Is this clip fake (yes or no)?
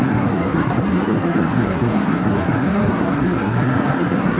yes